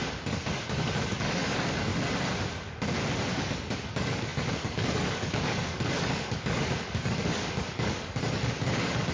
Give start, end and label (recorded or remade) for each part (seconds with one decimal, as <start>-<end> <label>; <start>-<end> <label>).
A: 0.0-1.9 remade; 1.9-3.3 recorded; 3.3-9.1 remade